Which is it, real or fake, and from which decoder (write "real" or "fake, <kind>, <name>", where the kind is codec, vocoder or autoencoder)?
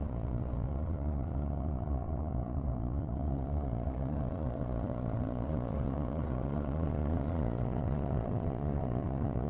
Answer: fake, vocoder, Vocos